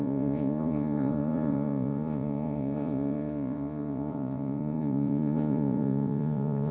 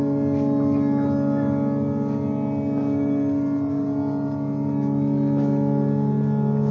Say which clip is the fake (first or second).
first